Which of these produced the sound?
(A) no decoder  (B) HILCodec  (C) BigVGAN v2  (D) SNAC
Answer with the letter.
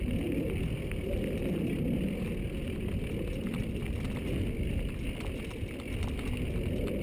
A